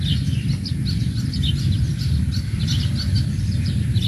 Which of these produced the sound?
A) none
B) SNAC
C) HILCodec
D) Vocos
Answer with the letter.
A